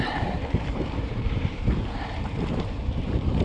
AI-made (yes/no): yes